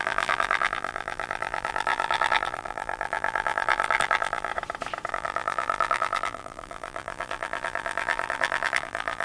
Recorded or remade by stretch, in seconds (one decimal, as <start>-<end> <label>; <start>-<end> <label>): 0.0-4.5 remade; 4.5-5.1 recorded; 5.1-9.2 remade